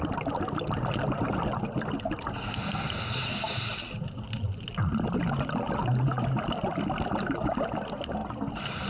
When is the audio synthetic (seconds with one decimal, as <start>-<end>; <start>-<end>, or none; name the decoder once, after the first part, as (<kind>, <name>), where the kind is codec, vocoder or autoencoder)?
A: 8.2-8.9 (vocoder, BigVGAN v2)